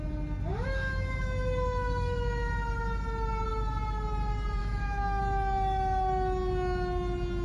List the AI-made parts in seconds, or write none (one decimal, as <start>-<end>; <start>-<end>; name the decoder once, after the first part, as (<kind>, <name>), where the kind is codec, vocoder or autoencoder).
0.5-2.5 (autoencoder, DAC-VAE); 4.6-5.2